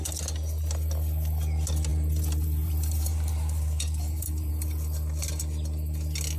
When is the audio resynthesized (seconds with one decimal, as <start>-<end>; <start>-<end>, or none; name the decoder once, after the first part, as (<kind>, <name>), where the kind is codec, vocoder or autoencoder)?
1.9-4.5 (vocoder, BigVGAN v2)